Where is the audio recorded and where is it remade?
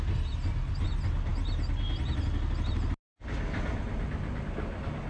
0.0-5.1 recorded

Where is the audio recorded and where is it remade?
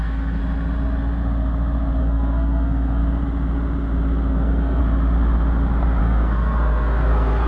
0.0-0.4 remade; 0.4-2.0 recorded; 2.0-3.0 remade; 3.0-4.3 recorded; 4.3-4.8 remade; 4.8-6.0 recorded; 6.0-7.5 remade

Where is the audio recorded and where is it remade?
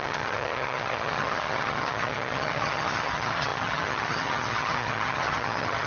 0.0-5.9 remade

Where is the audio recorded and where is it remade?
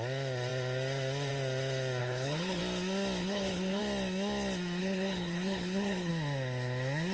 0.0-2.0 recorded; 2.0-2.6 remade; 2.6-3.2 recorded; 3.2-3.8 remade; 3.8-4.8 recorded; 4.8-6.1 remade; 6.1-7.1 recorded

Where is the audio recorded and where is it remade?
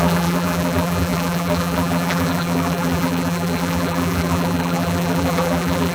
0.0-5.9 remade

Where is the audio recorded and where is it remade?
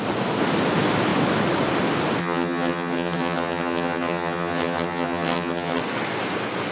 0.0-2.2 recorded; 2.2-5.8 remade; 5.8-6.7 recorded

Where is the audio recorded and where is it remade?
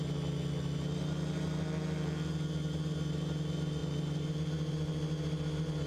0.0-5.9 recorded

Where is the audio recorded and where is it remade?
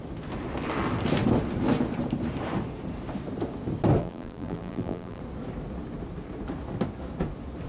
0.0-4.0 recorded; 4.0-5.2 remade; 5.2-7.7 recorded